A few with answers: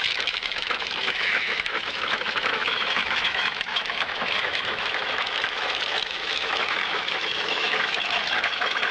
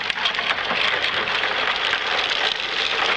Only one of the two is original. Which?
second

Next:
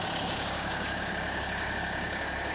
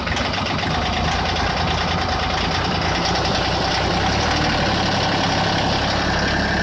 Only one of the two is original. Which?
second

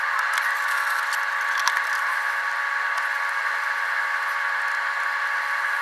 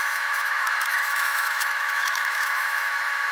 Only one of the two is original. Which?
first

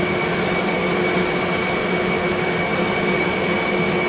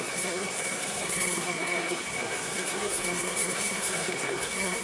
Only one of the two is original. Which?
first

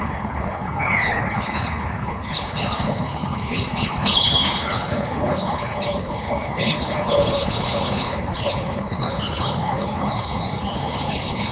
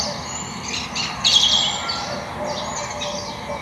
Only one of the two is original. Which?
second